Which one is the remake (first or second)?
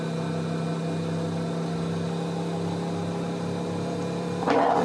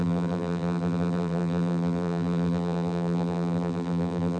second